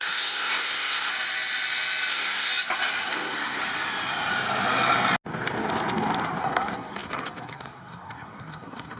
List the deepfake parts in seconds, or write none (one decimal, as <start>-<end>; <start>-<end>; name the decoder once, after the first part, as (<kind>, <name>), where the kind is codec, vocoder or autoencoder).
0.0-1.1 (codec, SNAC); 2.1-2.5; 3.1-3.6; 6.4-9.0